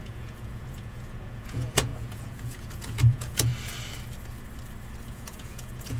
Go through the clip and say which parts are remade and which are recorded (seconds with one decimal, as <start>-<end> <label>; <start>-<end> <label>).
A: 0.0-3.5 remade; 3.5-5.1 recorded; 5.1-6.0 remade